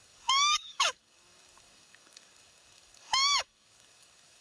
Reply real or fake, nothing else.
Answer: fake